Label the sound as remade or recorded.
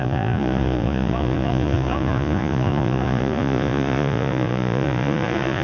remade